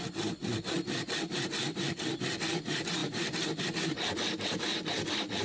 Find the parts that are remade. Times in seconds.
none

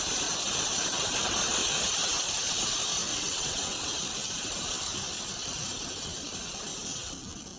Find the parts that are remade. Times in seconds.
3.1-3.9 (vocoder, WaveNeXt)

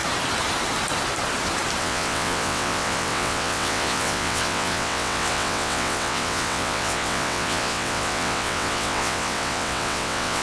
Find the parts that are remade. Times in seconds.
1.8-10.4 (vocoder, WaveNeXt)